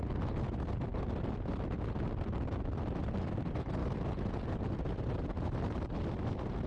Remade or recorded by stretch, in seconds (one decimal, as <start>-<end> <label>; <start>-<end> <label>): 0.0-6.7 recorded